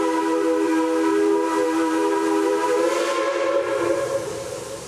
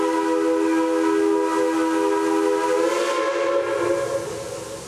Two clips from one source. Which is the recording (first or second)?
second